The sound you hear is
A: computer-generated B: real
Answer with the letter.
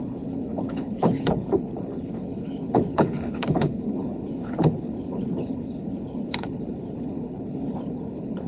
A